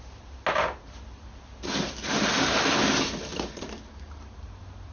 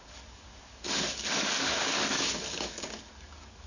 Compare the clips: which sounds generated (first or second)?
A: second